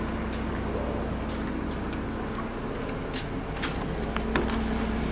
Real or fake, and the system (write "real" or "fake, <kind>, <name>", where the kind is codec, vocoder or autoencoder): real